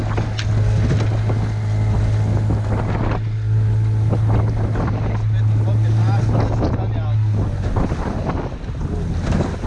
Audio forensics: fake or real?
real